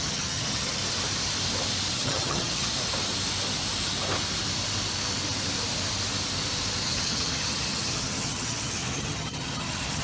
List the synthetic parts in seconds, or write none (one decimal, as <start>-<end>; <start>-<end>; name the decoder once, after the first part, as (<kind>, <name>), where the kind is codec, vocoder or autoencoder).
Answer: 0.0-0.8 (vocoder, HiFi-GAN); 1.9-2.7; 6.8-10.0